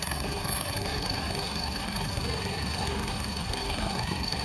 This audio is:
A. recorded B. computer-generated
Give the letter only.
B